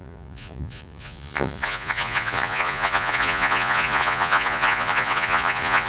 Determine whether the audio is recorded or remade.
remade